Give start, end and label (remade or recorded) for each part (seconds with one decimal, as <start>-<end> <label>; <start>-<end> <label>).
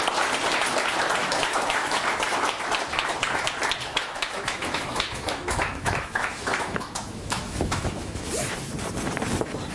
0.0-1.2 recorded; 1.2-2.0 remade; 2.0-3.9 recorded; 3.9-8.3 remade; 8.3-9.7 recorded